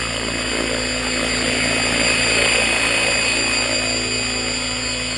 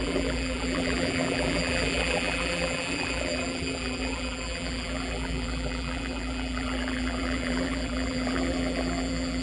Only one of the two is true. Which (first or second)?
first